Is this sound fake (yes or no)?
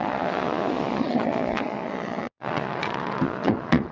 yes